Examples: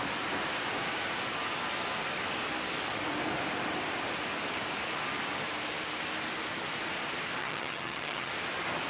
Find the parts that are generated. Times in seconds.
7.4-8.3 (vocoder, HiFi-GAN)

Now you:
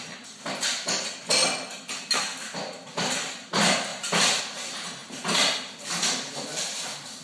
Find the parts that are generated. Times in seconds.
3.9-4.4 (vocoder, BigVGAN v2)

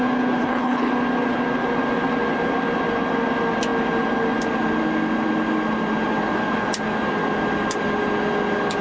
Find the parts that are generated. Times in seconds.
0.4-0.9 (codec, HILCodec)

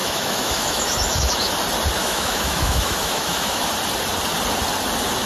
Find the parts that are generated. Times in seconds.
0.0-1.5 (autoencoder, DAC-VAE); 2.0-3.7

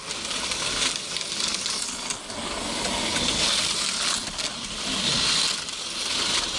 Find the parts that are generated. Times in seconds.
4.5-5.3 (vocoder, BigVGAN v2)

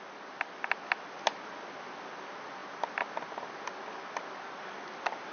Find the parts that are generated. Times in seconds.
none